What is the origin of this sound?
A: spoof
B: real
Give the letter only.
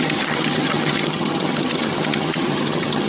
A